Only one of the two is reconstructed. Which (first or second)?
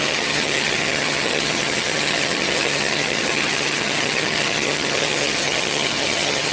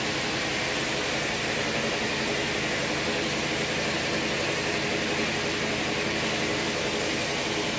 first